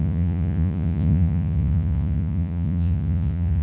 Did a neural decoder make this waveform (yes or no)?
yes